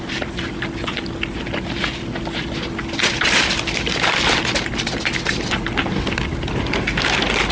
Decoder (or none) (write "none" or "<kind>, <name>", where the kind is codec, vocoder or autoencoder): none